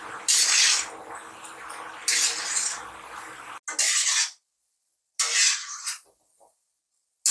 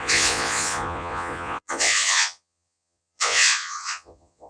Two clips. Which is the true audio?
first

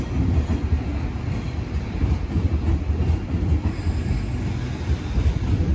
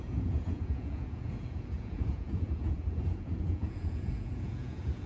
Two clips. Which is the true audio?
first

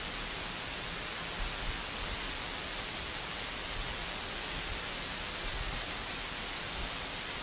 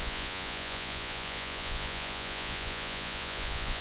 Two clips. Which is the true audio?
first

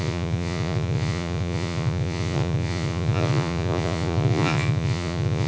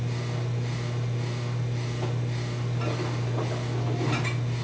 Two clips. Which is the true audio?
second